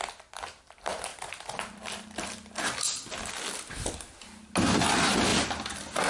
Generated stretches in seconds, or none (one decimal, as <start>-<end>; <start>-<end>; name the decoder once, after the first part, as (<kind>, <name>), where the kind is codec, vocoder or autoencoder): 1.1-3.3 (vocoder, BigVGAN v2)